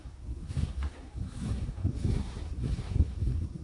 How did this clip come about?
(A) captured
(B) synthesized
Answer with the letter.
B